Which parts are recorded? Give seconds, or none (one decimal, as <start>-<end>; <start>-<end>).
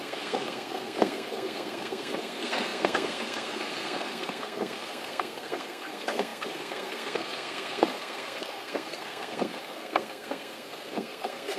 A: none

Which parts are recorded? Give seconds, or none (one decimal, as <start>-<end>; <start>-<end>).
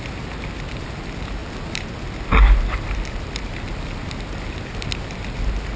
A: 0.0-5.8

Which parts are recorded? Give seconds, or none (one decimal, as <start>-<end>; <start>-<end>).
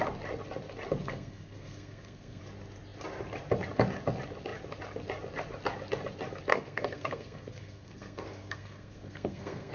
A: 0.0-1.0; 2.4-6.5